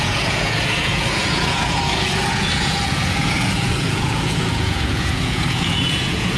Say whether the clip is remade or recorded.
remade